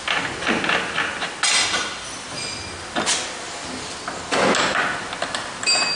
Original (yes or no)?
yes